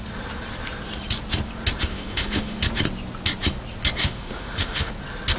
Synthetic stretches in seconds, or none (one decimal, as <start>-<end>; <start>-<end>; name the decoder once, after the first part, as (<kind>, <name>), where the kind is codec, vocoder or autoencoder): 1.9-2.6 (autoencoder, DAC-VAE); 4.0-4.9